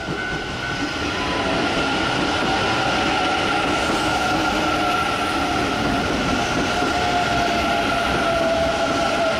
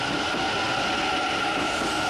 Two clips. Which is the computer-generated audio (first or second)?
first